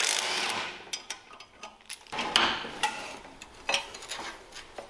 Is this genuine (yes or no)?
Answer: yes